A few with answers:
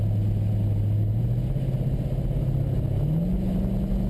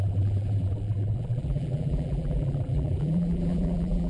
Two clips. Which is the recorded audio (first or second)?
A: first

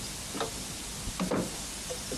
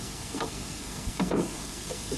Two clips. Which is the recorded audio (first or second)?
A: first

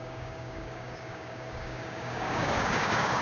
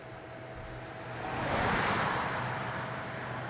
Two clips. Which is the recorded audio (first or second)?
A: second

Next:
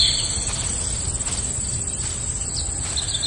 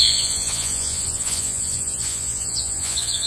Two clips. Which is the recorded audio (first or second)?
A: first